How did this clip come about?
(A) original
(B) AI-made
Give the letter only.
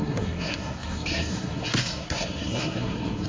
B